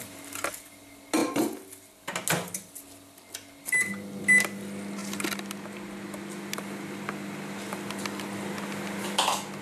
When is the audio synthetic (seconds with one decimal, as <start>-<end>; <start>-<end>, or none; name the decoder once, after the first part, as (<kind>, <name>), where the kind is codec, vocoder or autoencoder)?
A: none